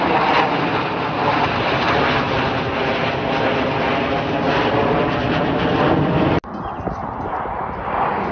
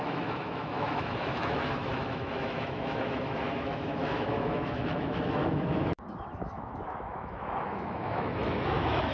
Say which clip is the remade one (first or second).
second